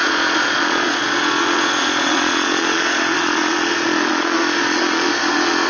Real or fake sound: fake